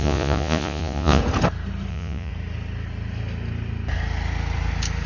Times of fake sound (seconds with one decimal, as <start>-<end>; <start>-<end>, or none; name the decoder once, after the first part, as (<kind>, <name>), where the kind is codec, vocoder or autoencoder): 0.0-1.2 (vocoder, Vocos); 1.9-2.3